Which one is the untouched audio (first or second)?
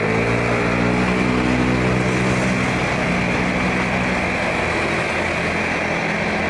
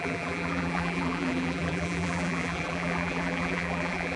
first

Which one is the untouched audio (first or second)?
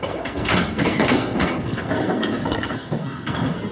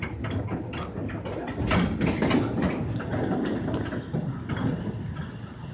second